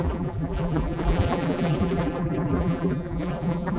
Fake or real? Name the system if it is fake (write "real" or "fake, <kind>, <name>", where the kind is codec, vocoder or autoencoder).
fake, vocoder, BigVGAN v2